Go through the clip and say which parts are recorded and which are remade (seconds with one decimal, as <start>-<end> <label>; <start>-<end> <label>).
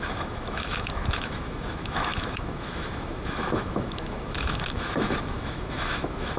0.0-6.4 remade